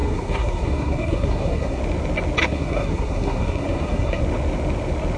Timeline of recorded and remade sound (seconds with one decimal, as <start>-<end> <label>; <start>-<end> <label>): 0.0-1.8 remade; 1.8-2.4 recorded; 2.4-4.2 remade; 4.2-5.2 recorded